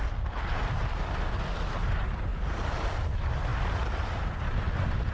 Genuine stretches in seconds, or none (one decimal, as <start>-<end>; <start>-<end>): 0.0-5.1